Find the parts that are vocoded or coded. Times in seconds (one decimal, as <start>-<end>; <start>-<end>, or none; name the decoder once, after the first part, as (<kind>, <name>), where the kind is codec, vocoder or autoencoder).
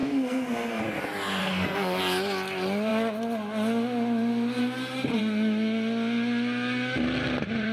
0.0-0.8 (codec, SNAC); 1.4-2.0